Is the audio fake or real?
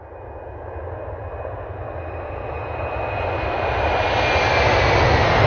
real